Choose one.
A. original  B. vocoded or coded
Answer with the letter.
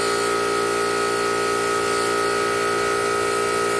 A